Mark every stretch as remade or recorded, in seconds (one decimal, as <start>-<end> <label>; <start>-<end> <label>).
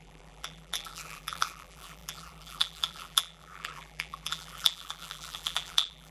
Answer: 0.0-6.1 remade